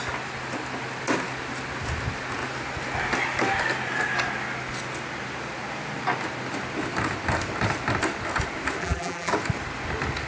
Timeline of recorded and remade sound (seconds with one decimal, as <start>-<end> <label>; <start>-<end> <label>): 0.0-8.8 recorded; 8.8-9.3 remade; 9.3-10.3 recorded